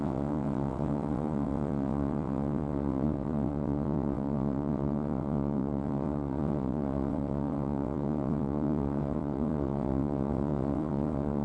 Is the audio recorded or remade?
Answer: remade